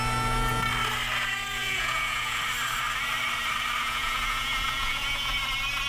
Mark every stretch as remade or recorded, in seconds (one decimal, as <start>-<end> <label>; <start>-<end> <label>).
0.0-1.6 recorded; 1.6-2.4 remade; 2.4-3.8 recorded; 3.8-5.4 remade; 5.4-5.9 recorded